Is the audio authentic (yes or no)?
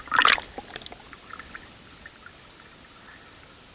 yes